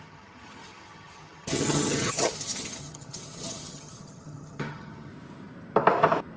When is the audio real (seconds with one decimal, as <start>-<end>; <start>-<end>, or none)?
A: 5.1-6.4